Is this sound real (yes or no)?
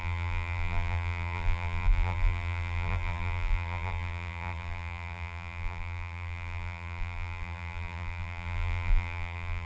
no